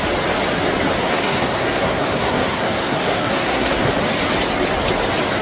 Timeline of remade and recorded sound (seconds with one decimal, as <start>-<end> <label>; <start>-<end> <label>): 0.0-1.0 recorded; 1.0-3.9 remade; 3.9-5.4 recorded